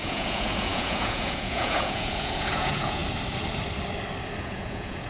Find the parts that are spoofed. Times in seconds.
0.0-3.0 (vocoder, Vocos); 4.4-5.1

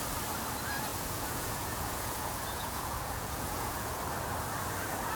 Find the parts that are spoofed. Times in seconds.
0.9-4.0 (vocoder, Vocos)